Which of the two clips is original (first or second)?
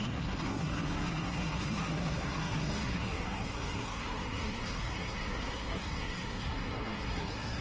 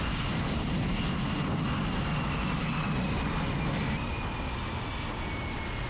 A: second